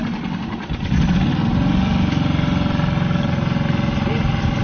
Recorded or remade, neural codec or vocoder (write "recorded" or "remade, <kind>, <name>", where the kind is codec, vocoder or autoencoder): recorded